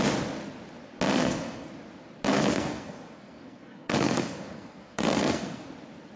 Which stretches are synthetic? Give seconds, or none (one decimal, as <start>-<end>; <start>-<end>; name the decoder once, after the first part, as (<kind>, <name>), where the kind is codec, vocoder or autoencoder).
1.1-1.7 (codec, SNAC); 2.3-5.7